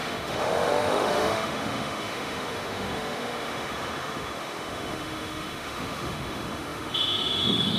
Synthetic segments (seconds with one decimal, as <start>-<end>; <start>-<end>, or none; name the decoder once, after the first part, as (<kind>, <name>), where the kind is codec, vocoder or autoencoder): 0.0-7.8 (autoencoder, DAC-VAE)